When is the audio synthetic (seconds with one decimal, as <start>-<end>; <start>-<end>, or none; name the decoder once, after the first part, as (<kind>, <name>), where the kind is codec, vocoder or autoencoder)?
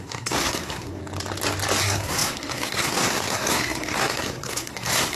0.0-1.0 (codec, SNAC); 1.8-5.2